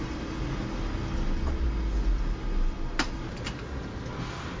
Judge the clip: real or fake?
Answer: real